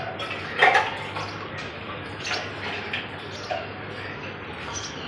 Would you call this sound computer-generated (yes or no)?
no